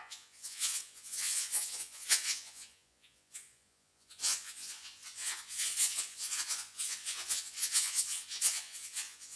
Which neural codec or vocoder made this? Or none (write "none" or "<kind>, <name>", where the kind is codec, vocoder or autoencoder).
vocoder, Vocos